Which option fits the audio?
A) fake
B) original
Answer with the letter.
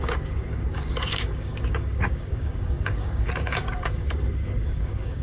A